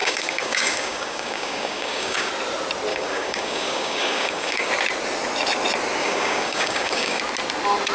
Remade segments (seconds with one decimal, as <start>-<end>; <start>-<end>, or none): 0.0-2.3; 2.9-4.7; 6.0-7.2

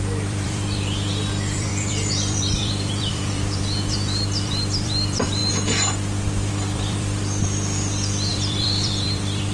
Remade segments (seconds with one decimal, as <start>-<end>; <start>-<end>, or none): 0.0-5.4; 6.5-7.2; 8.3-9.5

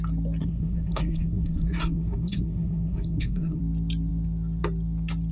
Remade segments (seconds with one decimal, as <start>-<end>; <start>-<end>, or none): 0.4-3.6

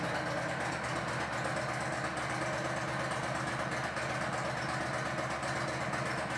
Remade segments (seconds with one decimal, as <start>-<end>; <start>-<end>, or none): none

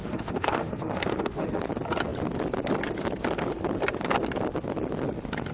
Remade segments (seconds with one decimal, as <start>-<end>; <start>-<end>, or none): 0.0-1.6

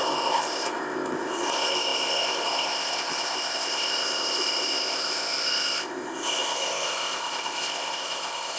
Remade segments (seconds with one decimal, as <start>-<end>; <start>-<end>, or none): 0.0-8.6